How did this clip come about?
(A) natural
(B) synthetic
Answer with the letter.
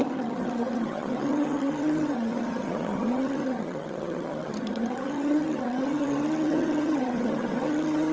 B